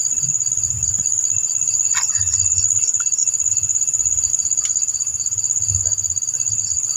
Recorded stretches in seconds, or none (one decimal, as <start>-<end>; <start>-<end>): 0.0-7.0